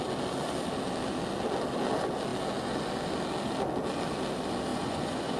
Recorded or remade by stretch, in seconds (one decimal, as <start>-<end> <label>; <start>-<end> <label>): 0.0-4.7 recorded; 4.7-5.4 remade